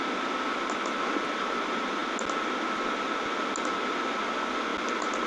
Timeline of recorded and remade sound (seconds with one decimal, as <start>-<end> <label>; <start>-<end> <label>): 0.0-5.3 recorded